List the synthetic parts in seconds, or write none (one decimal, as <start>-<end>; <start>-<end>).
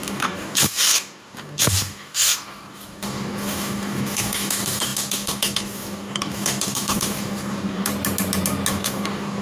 0.0-7.9; 8.7-9.4